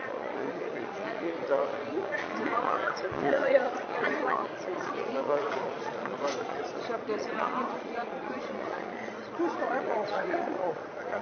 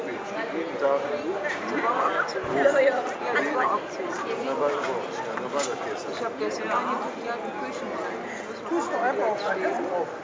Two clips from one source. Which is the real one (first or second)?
second